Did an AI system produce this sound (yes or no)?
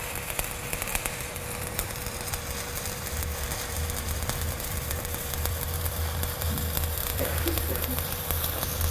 yes